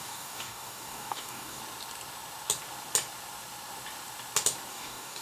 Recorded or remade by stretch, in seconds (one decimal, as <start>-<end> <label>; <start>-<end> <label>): 0.0-1.6 remade; 1.6-4.7 recorded; 4.7-5.2 remade